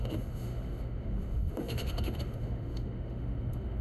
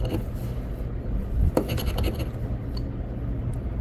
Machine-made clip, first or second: first